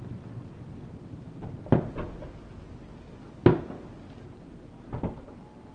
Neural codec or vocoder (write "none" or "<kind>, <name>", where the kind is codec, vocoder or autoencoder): none